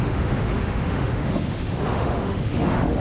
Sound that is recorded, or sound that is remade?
remade